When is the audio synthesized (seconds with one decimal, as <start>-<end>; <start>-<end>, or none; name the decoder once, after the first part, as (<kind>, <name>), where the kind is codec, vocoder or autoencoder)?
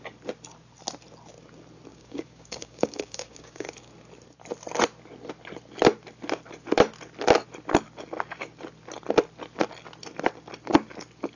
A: 1.9-3.9 (codec, DAC)